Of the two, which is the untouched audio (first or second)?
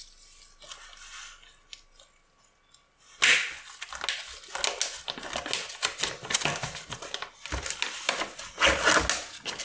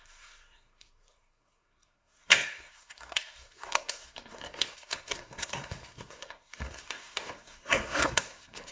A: first